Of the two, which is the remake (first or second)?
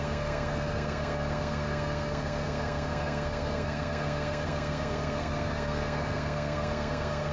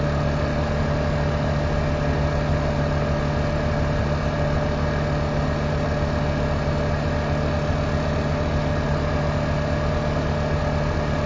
first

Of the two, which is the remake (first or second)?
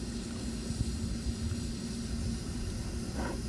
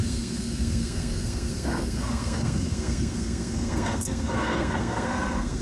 second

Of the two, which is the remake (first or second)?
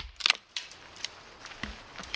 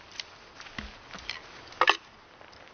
first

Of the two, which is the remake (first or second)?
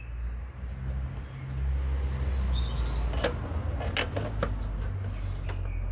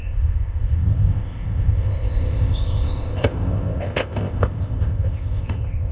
second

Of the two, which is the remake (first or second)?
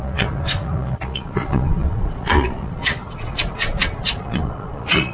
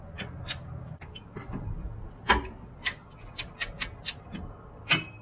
first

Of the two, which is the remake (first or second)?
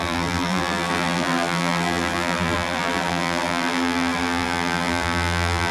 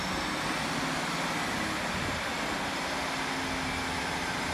first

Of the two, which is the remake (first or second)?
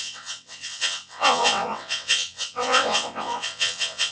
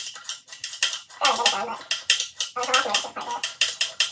first